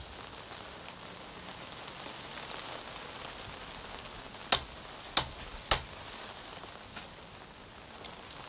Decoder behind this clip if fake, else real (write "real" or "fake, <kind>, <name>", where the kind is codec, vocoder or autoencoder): real